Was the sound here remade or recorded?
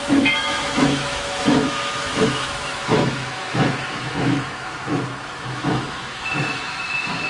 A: remade